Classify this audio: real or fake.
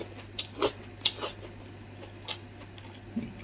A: real